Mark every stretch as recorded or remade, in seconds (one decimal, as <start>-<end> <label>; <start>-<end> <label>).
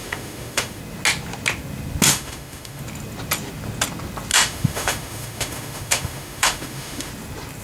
0.0-0.8 remade; 0.8-2.1 recorded; 2.1-2.8 remade; 2.8-4.3 recorded; 4.3-7.1 remade; 7.1-7.6 recorded